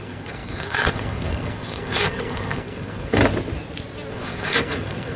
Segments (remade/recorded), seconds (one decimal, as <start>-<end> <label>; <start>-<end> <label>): 0.0-3.2 remade; 3.2-4.1 recorded; 4.1-5.2 remade